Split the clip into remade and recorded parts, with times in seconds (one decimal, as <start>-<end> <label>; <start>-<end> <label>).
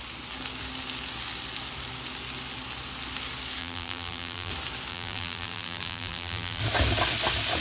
0.0-3.6 recorded; 3.6-4.5 remade; 4.5-4.9 recorded; 4.9-6.6 remade; 6.6-7.6 recorded